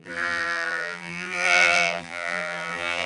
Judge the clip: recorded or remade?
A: remade